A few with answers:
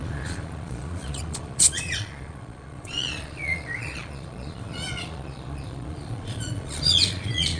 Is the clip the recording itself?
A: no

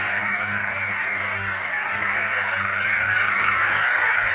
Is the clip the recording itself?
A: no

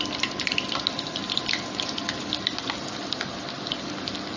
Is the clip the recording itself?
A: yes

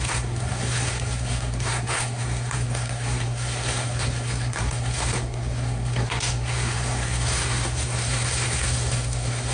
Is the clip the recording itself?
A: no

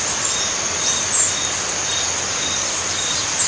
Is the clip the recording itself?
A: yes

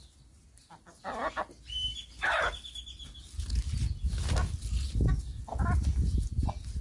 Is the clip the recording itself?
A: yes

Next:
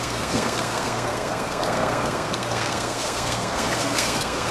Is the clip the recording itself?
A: no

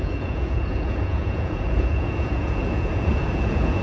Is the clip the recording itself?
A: no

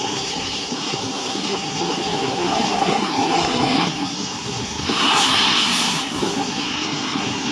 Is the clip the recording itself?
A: no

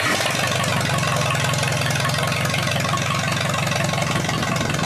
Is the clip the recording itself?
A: yes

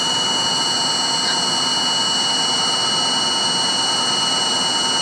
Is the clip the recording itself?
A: yes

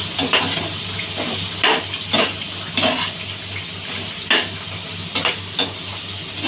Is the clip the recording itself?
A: yes